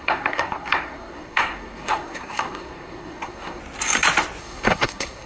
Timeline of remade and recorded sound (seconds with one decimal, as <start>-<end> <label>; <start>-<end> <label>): 0.0-3.6 remade; 3.6-4.4 recorded; 4.4-5.3 remade